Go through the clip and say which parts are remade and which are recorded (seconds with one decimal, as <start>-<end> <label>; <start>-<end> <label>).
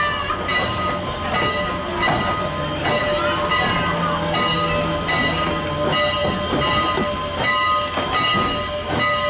0.0-9.3 recorded